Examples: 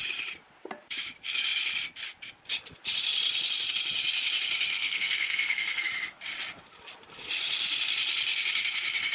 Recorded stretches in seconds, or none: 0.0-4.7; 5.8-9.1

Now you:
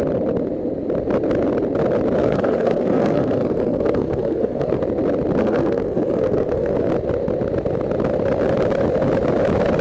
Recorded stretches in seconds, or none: 0.0-2.2; 4.8-5.4; 6.9-9.8